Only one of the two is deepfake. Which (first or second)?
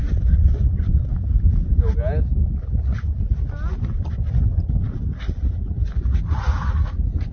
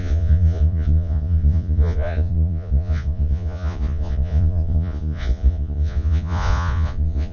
second